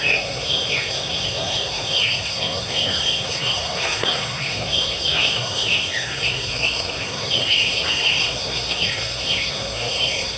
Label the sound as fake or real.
fake